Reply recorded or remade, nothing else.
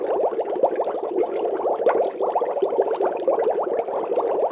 recorded